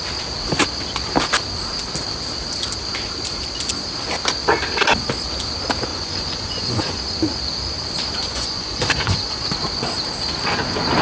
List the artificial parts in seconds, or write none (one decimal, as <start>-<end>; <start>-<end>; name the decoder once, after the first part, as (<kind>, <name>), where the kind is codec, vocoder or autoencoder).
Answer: 5.9-7.0 (vocoder, Vocos); 8.3-9.4